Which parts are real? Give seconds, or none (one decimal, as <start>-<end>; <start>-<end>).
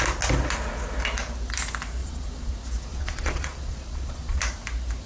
0.0-2.0; 2.5-2.9; 4.4-5.1